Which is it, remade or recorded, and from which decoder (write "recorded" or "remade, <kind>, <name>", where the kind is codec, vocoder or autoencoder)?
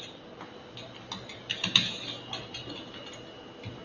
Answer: recorded